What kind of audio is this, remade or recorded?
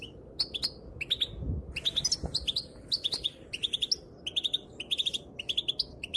recorded